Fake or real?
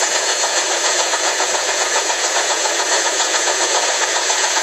fake